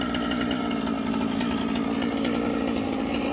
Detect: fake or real real